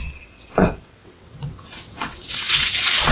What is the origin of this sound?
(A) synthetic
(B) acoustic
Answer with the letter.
A